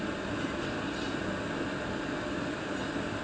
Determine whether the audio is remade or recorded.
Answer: recorded